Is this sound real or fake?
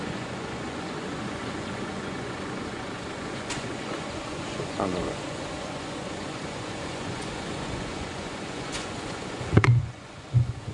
fake